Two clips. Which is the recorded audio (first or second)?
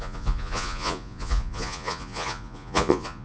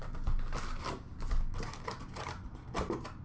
second